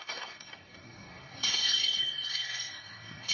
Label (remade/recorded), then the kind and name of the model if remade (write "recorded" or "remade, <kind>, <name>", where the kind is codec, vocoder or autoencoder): remade, codec, SNAC